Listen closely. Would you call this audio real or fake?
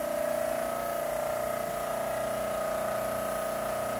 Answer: real